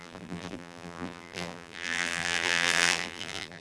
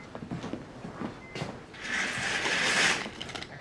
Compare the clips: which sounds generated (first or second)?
first